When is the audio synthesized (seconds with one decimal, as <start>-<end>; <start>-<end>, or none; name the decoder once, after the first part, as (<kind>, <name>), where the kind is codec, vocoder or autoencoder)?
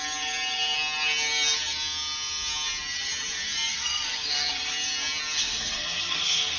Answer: 3.7-4.3 (codec, SNAC); 5.4-6.6